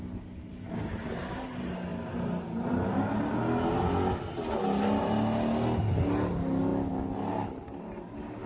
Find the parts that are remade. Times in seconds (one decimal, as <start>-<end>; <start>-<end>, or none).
none